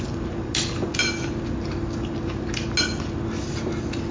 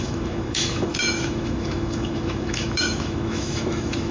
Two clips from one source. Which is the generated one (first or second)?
second